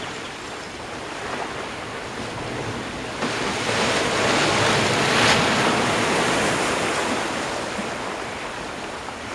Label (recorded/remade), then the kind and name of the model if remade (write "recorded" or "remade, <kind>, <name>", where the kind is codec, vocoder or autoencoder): recorded